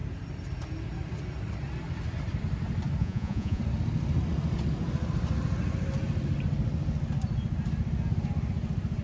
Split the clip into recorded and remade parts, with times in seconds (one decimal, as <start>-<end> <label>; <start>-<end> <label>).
0.0-3.0 recorded; 3.0-3.6 remade; 3.6-9.0 recorded